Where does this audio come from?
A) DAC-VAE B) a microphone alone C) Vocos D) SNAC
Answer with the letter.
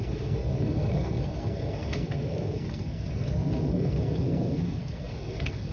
D